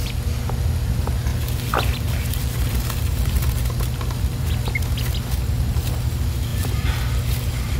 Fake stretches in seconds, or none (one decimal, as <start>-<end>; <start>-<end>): 1.3-4.5; 6.5-7.8